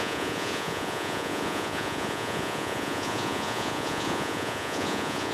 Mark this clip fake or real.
fake